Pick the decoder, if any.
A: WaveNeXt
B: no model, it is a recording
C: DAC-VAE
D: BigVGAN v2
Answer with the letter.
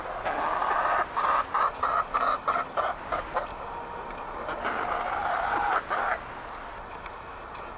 D